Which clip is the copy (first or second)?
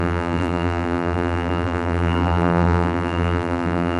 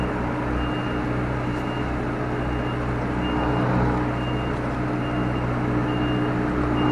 first